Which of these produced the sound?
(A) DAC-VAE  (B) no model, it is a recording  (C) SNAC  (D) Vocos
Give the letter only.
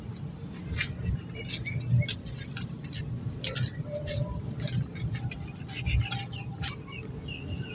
B